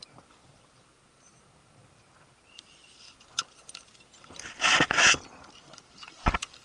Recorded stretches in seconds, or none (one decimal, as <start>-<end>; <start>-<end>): 0.0-6.6

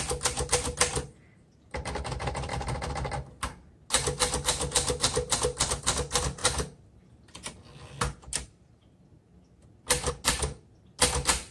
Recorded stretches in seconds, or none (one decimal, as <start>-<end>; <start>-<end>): 0.0-2.5; 3.1-11.5

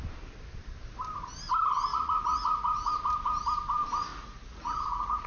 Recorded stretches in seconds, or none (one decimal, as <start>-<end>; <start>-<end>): 0.0-1.9; 2.9-4.1

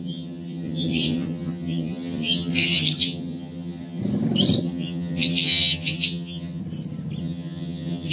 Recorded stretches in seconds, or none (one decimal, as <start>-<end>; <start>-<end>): 4.0-4.6; 6.6-7.2

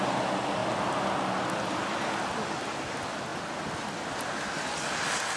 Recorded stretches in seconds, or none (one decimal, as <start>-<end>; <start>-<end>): 0.0-5.4

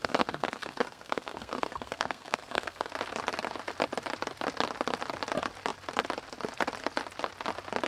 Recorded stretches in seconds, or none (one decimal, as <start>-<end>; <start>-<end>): 2.9-7.9

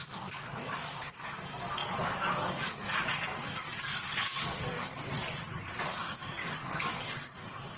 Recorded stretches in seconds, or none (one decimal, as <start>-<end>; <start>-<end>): 4.9-5.8

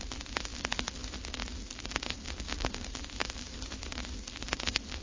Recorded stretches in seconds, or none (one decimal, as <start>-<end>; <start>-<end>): 0.0-3.2; 4.0-5.0